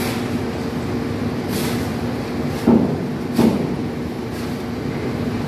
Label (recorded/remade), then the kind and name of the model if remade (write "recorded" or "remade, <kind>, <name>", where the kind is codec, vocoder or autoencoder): recorded